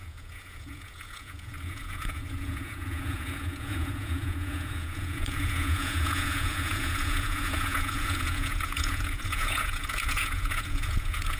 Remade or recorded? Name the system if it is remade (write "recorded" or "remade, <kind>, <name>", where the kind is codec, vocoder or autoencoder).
remade, vocoder, Vocos